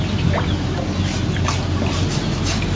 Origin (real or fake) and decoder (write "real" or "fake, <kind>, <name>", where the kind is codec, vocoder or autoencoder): real